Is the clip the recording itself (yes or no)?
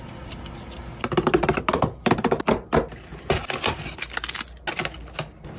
yes